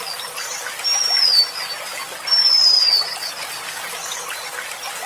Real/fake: real